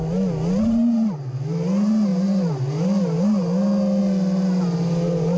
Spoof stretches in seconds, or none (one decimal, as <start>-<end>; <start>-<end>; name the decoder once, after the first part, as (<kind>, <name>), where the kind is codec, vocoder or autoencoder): none